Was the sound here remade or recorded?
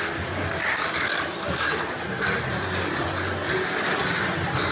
recorded